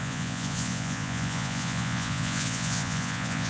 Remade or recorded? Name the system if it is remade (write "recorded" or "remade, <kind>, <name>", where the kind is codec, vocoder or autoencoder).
remade, vocoder, Vocos